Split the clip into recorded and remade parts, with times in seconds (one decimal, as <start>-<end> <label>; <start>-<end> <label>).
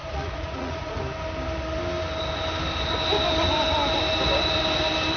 0.0-1.0 remade; 1.0-5.2 recorded